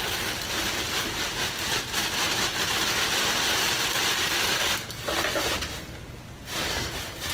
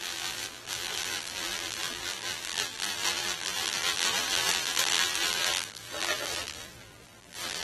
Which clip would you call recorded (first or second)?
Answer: first